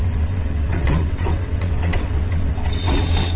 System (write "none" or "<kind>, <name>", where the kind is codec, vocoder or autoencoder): vocoder, WaveNeXt